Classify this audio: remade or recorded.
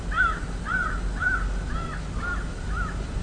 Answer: recorded